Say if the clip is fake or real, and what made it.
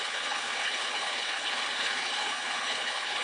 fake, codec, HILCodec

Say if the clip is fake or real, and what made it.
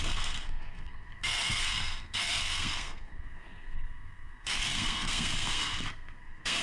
fake, codec, SNAC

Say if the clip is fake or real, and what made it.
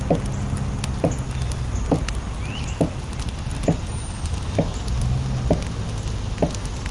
real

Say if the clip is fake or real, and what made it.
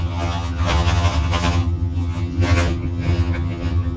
fake, vocoder, HiFi-GAN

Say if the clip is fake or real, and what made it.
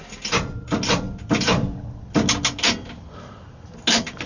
real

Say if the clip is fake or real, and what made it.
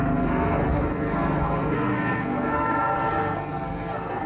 fake, codec, SNAC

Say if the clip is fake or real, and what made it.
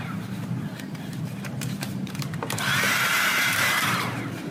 fake, vocoder, BigVGAN v2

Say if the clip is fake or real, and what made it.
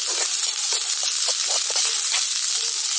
fake, vocoder, BigVGAN v2